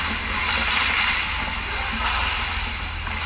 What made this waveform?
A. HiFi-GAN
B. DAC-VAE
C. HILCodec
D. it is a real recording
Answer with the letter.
D